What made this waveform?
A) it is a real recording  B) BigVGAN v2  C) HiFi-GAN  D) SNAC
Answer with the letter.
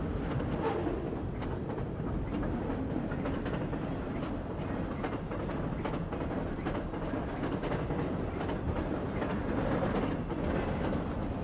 A